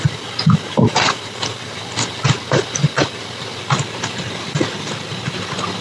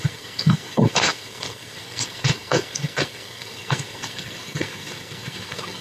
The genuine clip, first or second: first